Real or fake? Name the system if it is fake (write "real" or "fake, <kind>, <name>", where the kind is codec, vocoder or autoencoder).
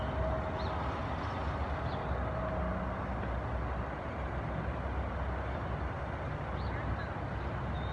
real